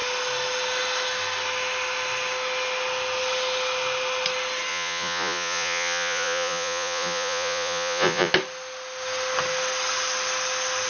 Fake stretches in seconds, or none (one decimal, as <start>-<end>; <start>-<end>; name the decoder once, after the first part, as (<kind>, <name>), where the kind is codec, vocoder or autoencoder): 4.7-8.3 (vocoder, Vocos)